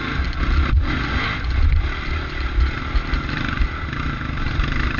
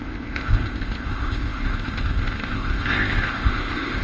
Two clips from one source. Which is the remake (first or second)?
second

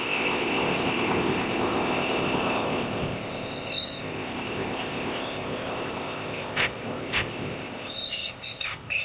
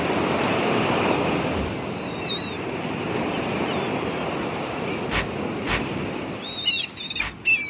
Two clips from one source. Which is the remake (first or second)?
first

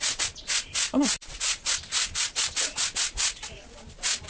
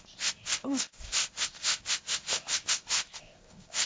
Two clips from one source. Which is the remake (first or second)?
second